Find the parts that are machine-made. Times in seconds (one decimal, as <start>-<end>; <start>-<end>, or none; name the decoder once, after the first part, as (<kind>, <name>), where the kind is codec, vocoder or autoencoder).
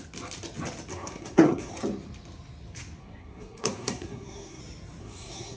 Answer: 0.9-1.7 (codec, SNAC); 3.0-4.6; 5.0-5.6